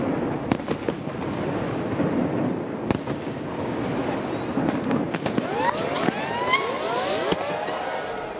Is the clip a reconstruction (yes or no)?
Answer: no